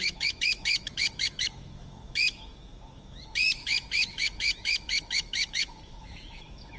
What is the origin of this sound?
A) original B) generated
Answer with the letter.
B